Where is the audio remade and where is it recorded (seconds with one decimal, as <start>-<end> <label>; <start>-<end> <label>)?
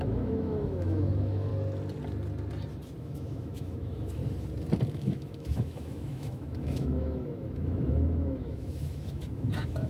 0.0-1.5 remade; 1.5-3.0 recorded; 3.0-4.2 remade; 4.2-4.9 recorded; 4.9-9.9 remade